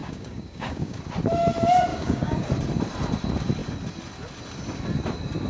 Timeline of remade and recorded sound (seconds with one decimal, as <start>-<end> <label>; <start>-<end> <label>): 0.0-1.0 remade; 1.0-1.9 recorded; 1.9-2.5 remade; 2.5-5.5 recorded